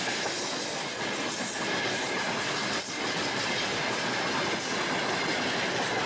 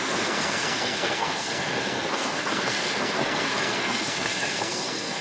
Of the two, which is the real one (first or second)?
first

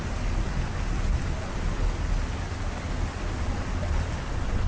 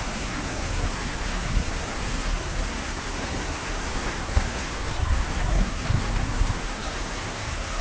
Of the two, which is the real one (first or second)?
first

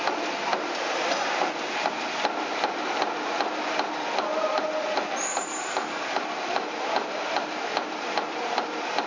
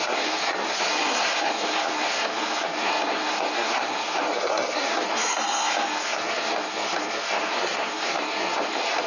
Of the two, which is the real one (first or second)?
first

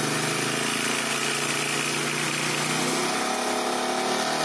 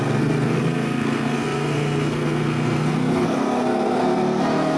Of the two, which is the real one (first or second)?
first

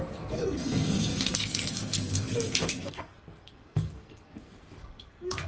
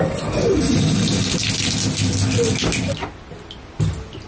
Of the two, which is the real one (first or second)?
second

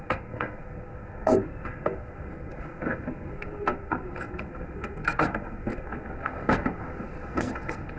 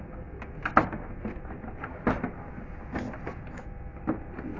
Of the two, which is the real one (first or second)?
second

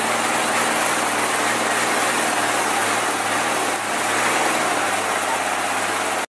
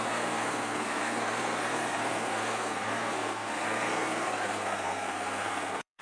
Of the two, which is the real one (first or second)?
first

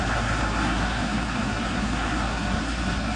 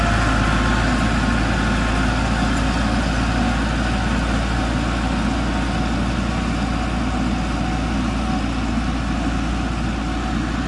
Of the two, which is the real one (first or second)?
second